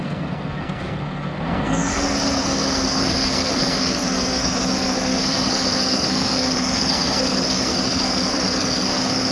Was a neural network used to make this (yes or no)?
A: yes